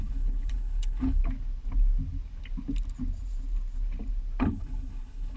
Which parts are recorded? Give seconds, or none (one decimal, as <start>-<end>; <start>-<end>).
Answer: 1.2-4.4